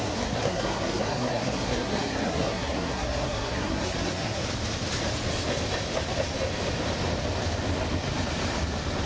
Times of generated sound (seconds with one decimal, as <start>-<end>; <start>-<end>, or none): 0.0-4.4